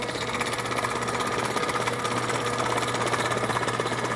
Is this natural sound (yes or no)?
yes